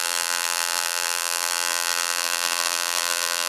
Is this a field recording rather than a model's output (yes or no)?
no